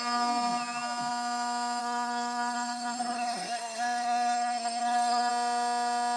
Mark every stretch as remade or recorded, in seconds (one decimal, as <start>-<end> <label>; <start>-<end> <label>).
0.0-1.8 recorded; 1.8-5.3 remade; 5.3-6.2 recorded

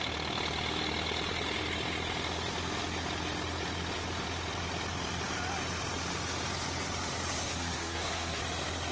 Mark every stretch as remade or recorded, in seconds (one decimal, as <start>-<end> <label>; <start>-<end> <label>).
0.0-7.4 recorded; 7.4-8.4 remade; 8.4-8.9 recorded

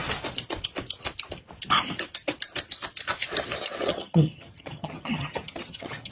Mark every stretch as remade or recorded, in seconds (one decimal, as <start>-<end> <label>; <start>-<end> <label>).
0.0-3.7 recorded; 3.7-6.1 remade

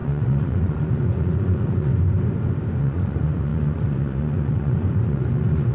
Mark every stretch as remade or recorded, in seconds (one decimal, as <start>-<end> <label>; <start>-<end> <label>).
0.0-1.9 remade; 1.9-2.8 recorded; 2.8-5.7 remade

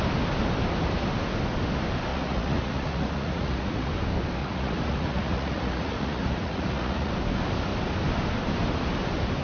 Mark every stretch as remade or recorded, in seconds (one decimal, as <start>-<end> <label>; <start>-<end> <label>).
0.0-2.1 recorded; 2.1-3.9 remade; 3.9-4.4 recorded; 4.4-7.1 remade; 7.1-9.4 recorded

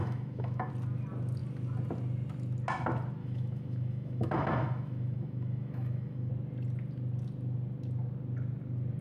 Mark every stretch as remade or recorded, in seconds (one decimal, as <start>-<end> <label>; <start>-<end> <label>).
0.0-0.7 remade; 0.7-3.2 recorded; 3.2-6.3 remade; 6.3-9.0 recorded